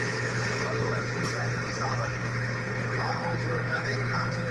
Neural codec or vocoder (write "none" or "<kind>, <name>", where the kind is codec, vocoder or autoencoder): codec, HILCodec